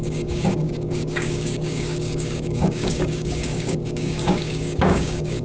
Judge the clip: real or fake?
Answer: fake